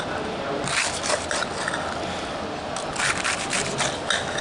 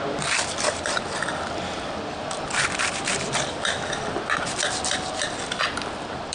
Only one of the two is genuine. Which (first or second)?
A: first